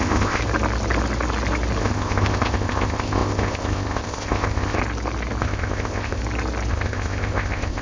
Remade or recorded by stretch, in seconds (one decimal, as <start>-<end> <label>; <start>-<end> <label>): 0.0-0.4 remade; 0.4-1.8 recorded; 1.8-4.8 remade; 4.8-5.4 recorded; 5.4-6.2 remade; 6.2-6.7 recorded; 6.7-7.8 remade